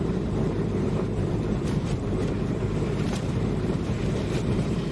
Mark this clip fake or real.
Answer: fake